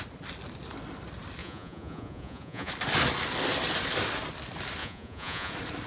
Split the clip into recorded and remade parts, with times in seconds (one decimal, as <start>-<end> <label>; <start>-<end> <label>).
0.0-1.4 recorded; 1.4-2.7 remade; 2.7-4.8 recorded; 4.8-5.5 remade; 5.5-5.9 recorded